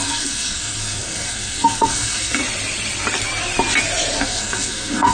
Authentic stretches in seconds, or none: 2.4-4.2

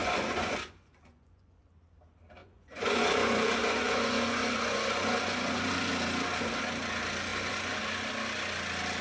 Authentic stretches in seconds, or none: 1.6-2.4; 5.9-7.3; 7.8-9.0

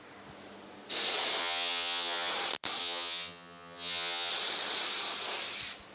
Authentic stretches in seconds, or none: 0.0-1.4; 2.3-2.8; 4.3-5.9

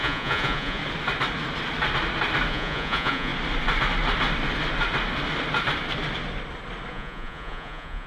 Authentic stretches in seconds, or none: 0.8-2.5; 3.3-6.9

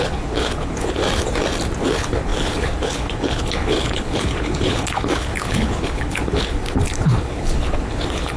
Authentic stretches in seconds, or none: 1.0-1.8

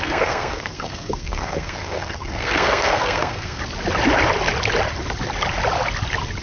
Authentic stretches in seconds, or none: 3.6-6.4

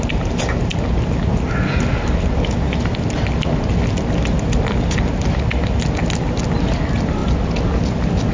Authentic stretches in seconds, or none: 0.0-8.3